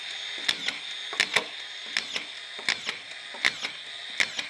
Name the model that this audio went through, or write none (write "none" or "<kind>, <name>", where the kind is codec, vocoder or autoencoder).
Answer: none